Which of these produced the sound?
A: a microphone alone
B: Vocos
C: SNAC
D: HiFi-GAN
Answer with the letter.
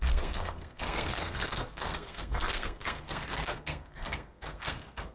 C